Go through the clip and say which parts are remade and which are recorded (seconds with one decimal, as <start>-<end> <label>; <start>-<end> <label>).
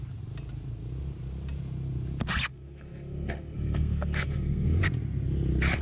0.0-2.5 recorded; 2.5-4.8 remade; 4.8-5.8 recorded